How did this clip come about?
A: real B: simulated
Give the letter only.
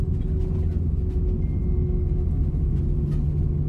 A